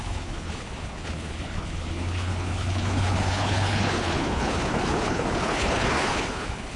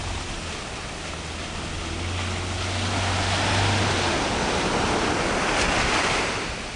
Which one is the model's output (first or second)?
first